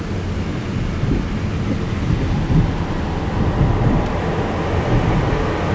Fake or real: real